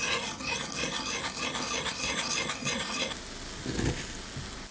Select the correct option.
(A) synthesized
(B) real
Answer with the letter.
B